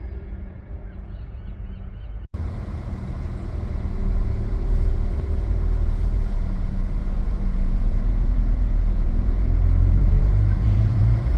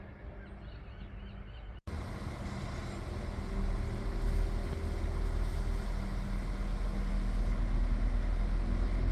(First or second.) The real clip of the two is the second